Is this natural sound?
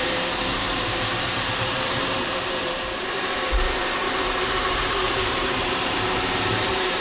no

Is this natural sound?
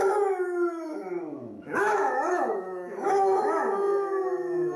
no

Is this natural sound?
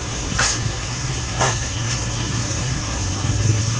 no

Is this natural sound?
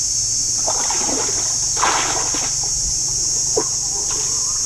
yes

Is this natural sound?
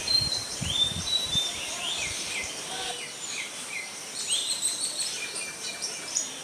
no